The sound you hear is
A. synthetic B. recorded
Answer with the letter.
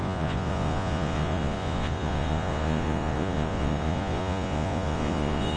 A